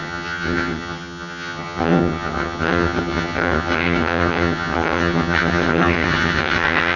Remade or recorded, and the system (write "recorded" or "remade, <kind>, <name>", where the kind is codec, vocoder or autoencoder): remade, vocoder, HiFi-GAN